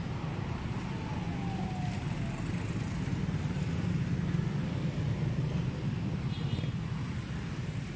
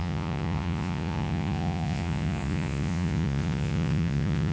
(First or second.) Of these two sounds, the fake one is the second